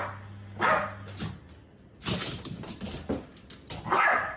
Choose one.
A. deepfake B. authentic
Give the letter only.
B